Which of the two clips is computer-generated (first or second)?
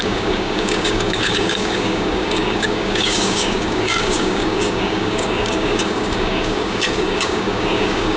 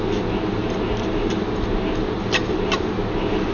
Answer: first